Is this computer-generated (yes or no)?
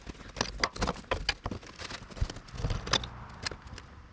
no